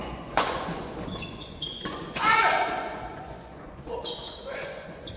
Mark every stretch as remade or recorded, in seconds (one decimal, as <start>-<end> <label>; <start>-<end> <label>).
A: 0.0-4.0 remade; 4.0-4.5 recorded; 4.5-5.2 remade